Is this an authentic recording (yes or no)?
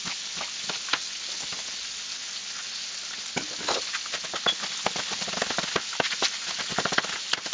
yes